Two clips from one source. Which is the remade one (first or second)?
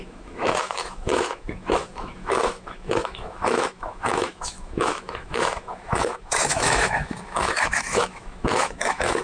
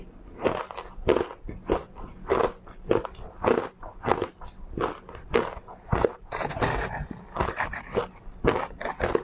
first